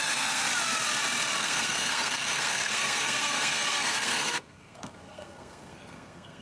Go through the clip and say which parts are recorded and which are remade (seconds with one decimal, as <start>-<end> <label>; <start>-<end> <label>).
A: 0.0-0.4 remade; 0.4-1.4 recorded; 1.4-6.4 remade